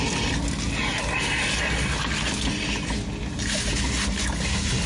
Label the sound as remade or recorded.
recorded